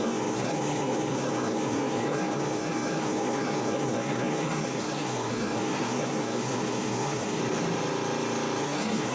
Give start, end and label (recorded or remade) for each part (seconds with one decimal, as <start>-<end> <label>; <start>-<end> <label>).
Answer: 0.0-7.4 remade; 7.4-8.6 recorded; 8.6-9.1 remade

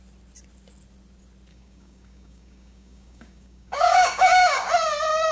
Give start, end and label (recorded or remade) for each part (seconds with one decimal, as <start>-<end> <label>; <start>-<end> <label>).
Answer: 0.0-1.5 recorded; 1.5-4.7 remade; 4.7-5.3 recorded

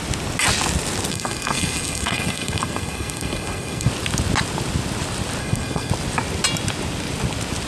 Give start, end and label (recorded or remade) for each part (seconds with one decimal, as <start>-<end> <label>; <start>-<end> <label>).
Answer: 0.0-1.1 recorded; 1.1-3.9 remade; 3.9-5.4 recorded; 5.4-5.9 remade; 5.9-7.7 recorded

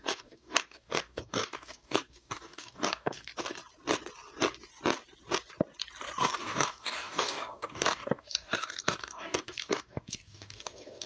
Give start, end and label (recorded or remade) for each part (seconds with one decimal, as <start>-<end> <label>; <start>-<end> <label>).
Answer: 0.0-3.3 remade; 3.3-6.4 recorded; 6.4-11.1 remade

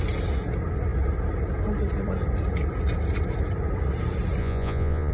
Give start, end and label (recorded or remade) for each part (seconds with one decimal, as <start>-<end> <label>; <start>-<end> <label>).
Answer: 0.0-4.4 recorded; 4.4-5.1 remade

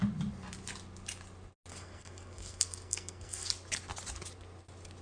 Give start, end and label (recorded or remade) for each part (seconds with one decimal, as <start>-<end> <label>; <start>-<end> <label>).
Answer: 0.0-1.7 recorded; 1.7-3.5 remade; 3.5-5.0 recorded

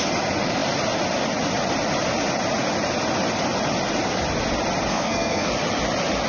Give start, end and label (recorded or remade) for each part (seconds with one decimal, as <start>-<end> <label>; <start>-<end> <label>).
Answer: 0.0-4.9 recorded; 4.9-5.5 remade; 5.5-6.3 recorded

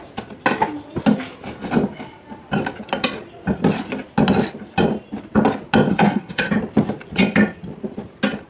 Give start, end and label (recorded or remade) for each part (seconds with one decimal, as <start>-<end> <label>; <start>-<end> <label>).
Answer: 0.0-5.9 recorded; 5.9-6.5 remade; 6.5-8.5 recorded